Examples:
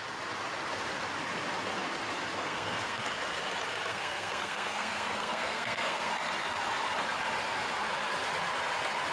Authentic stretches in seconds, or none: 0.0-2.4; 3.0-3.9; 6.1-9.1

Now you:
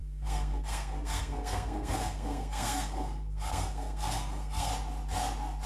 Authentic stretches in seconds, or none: 4.7-5.7

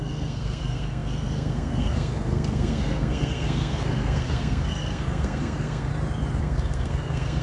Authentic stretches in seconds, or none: 5.9-6.4

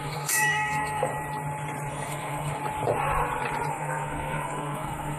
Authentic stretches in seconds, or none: 1.1-1.9; 2.6-3.7